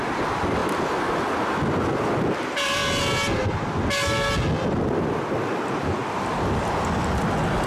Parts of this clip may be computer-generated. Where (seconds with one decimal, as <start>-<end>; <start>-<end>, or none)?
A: 0.0-0.6; 2.4-2.8